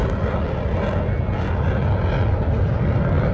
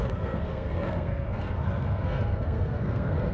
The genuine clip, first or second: first